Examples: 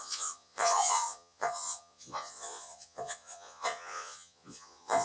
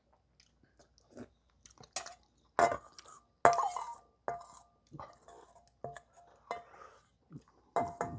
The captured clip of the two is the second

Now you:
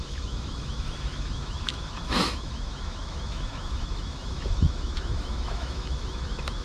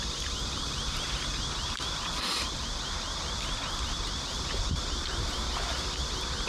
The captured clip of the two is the second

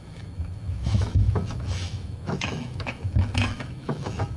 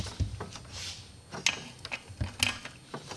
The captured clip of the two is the second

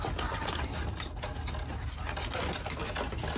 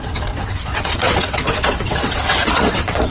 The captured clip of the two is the first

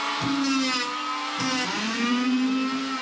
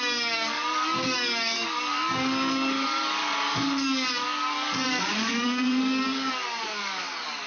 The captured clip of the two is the first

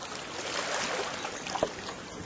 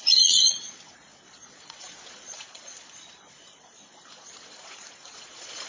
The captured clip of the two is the first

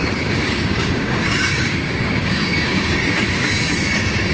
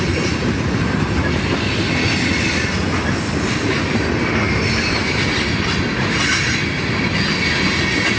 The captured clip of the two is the second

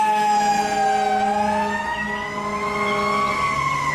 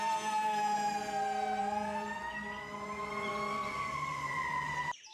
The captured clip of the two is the first